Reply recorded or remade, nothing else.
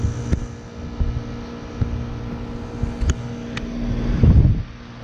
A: recorded